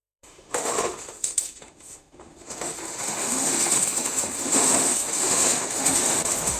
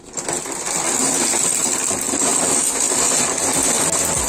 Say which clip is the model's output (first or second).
first